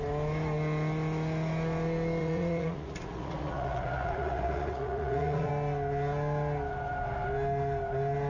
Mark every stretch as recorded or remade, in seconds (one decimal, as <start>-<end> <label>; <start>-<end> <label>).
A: 0.0-2.2 recorded; 2.2-5.5 remade; 5.5-8.3 recorded